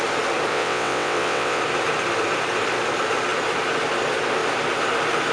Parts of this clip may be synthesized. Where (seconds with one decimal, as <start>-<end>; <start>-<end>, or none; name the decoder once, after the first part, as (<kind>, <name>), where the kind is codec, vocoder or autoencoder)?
0.5-1.6 (vocoder, WaveNeXt)